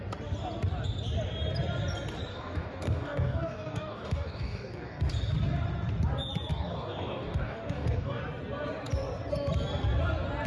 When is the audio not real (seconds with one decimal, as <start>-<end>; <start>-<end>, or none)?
2.3-5.1; 6.5-8.2